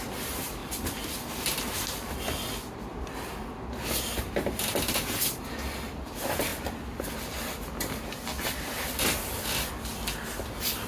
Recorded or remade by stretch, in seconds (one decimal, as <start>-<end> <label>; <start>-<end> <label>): 0.0-10.9 recorded